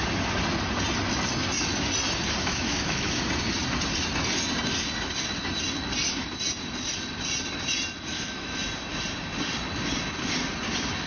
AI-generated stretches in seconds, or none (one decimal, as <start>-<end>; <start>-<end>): 2.4-3.2; 8.1-8.6